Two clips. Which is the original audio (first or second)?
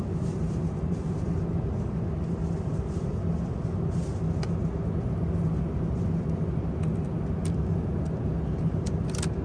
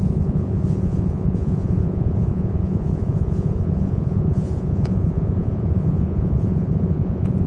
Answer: first